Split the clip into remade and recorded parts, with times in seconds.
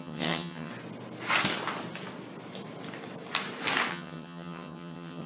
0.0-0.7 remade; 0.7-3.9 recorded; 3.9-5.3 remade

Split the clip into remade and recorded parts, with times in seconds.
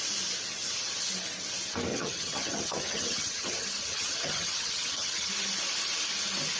0.0-1.9 recorded; 1.9-5.3 remade; 5.3-6.6 recorded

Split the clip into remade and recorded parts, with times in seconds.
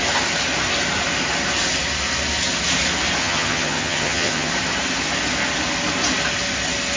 0.0-3.2 recorded; 3.2-4.5 remade; 4.5-7.0 recorded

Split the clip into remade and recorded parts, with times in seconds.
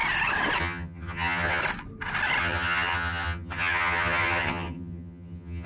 0.0-0.6 recorded; 0.6-1.6 remade; 1.6-2.4 recorded; 2.4-5.7 remade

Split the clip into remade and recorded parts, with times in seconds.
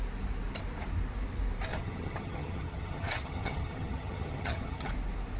0.0-1.7 recorded; 1.7-4.9 remade; 4.9-5.4 recorded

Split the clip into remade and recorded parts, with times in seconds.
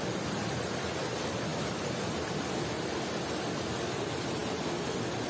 0.0-5.3 recorded